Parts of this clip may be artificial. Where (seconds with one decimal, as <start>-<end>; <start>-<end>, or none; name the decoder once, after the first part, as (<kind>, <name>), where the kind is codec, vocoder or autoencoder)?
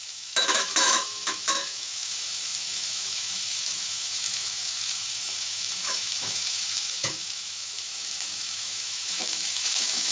0.0-10.1 (autoencoder, DAC-VAE)